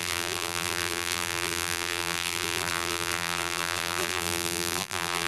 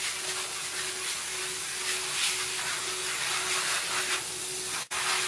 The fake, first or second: first